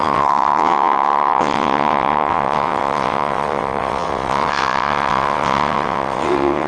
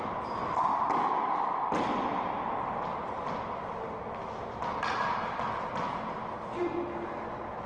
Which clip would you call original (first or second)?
second